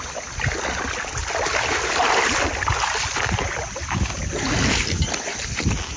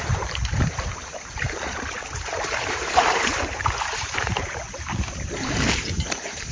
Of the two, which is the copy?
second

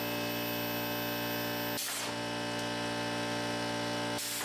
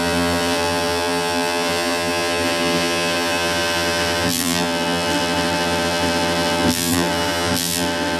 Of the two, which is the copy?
second